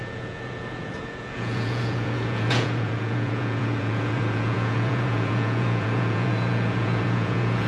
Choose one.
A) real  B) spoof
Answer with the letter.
B